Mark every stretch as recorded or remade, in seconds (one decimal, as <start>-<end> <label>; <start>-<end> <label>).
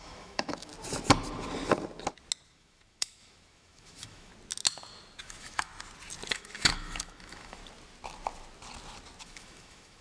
0.0-0.7 remade; 0.7-2.5 recorded; 2.5-4.3 remade; 4.3-5.2 recorded; 5.2-5.7 remade; 5.7-6.3 recorded; 6.3-7.6 remade; 7.6-9.2 recorded; 9.2-10.0 remade